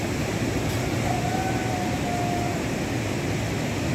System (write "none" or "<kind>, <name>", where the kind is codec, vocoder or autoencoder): none